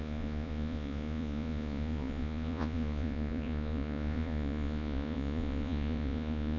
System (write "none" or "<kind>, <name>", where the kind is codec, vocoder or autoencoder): vocoder, Vocos